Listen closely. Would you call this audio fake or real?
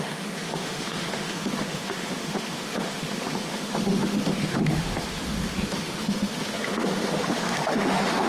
fake